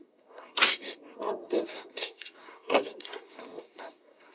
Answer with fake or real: fake